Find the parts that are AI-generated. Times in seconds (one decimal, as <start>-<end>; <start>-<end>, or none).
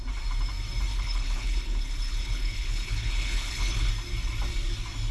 0.9-3.9